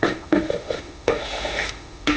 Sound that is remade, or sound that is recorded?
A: remade